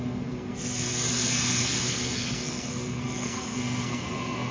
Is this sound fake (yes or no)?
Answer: yes